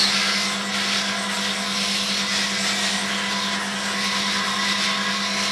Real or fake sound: real